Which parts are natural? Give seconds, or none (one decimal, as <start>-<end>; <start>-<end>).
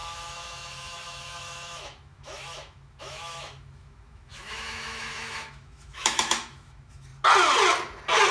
7.1-8.3